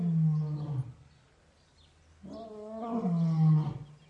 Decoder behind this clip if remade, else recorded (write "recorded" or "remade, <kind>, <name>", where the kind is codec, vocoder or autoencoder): recorded